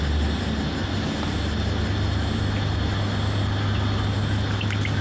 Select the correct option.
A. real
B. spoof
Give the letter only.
A